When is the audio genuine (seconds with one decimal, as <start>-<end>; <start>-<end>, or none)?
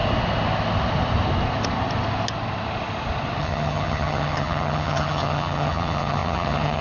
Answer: 0.0-3.4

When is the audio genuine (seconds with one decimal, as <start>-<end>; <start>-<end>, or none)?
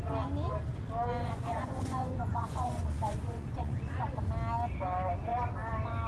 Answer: 0.0-1.2; 4.2-6.1